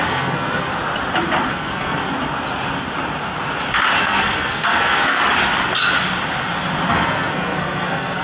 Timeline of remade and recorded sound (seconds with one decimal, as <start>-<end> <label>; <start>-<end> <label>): 0.0-0.7 remade; 0.7-1.5 recorded; 1.5-2.0 remade; 2.0-4.0 recorded; 4.0-5.2 remade; 5.2-6.9 recorded; 6.9-8.2 remade